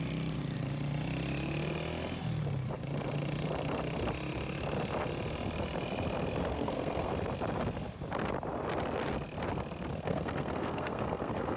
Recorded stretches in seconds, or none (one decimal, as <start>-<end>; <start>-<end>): 0.0-6.4; 7.1-9.9